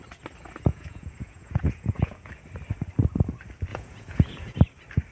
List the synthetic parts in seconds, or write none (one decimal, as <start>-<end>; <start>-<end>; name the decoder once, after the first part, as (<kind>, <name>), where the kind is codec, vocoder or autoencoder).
0.7-2.3 (vocoder, Vocos); 3.7-4.6

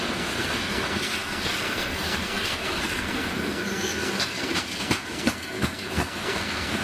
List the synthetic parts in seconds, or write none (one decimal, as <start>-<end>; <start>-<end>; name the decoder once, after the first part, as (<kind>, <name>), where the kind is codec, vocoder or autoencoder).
0.0-6.8 (codec, SNAC)